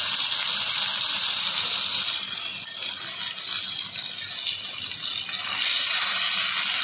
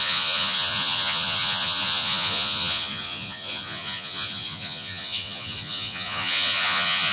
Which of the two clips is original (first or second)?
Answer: first